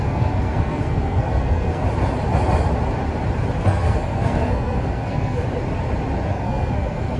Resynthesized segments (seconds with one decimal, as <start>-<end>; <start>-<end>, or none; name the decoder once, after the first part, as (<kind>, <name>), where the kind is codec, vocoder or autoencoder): 0.0-1.8 (codec, SNAC); 3.6-5.4; 6.3-7.2